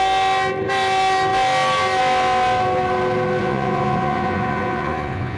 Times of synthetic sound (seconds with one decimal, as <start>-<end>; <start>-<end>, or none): 3.4-5.4